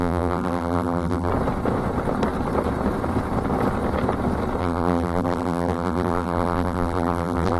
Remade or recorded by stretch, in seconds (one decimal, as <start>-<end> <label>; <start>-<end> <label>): 0.0-1.3 remade; 1.3-4.6 recorded; 4.6-7.6 remade